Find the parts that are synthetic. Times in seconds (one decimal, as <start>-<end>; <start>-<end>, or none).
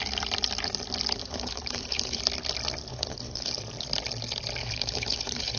1.2-2.2; 2.9-3.5; 4.6-5.6